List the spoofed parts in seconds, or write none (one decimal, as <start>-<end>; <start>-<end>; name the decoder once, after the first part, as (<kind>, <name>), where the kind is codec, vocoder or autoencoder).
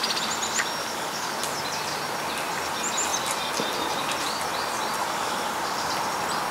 0.8-1.4 (codec, DAC); 5.0-5.9